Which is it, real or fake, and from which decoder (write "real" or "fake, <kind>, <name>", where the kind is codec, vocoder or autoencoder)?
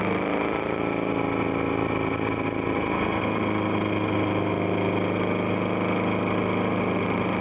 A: real